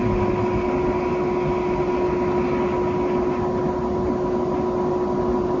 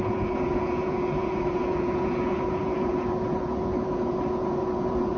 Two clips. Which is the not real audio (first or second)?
second